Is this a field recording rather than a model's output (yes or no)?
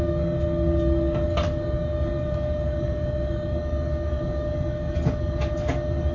no